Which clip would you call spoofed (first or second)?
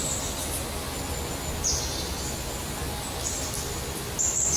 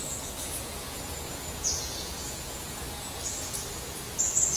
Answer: second